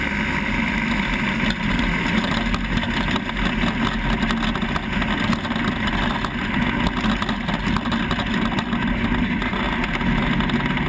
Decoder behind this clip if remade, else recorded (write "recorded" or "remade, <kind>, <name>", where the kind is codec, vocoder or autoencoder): recorded